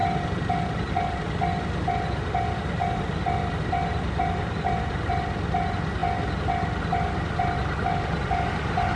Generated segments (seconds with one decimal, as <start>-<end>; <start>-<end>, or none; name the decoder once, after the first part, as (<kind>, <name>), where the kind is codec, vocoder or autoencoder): none